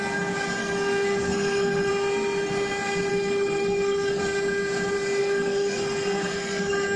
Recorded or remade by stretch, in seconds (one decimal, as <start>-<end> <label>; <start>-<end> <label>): 0.0-0.6 recorded; 0.6-1.9 remade; 1.9-3.1 recorded; 3.1-4.2 remade; 4.2-5.2 recorded; 5.2-7.0 remade